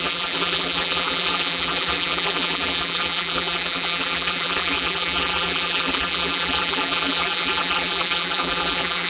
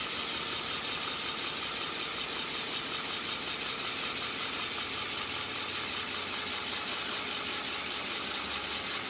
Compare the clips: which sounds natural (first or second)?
second